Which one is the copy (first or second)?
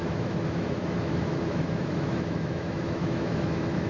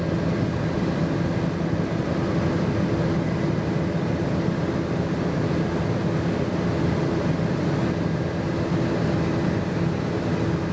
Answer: first